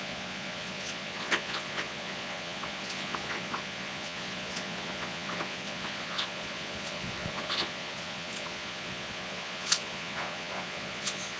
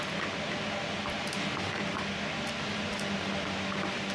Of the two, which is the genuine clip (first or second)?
second